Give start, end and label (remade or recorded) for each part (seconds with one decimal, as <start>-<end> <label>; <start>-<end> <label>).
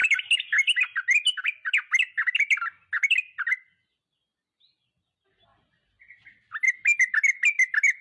0.0-8.0 recorded